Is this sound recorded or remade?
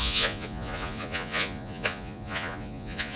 remade